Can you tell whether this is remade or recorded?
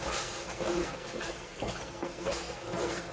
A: remade